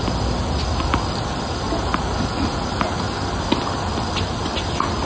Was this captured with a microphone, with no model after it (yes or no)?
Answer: yes